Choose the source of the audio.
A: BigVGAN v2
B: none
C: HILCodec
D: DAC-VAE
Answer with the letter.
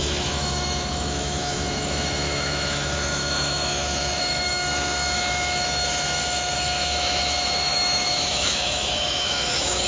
D